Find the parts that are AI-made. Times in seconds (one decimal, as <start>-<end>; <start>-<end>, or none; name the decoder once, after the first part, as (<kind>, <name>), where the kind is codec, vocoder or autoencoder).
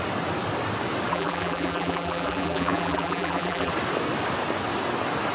1.1-3.7 (vocoder, BigVGAN v2)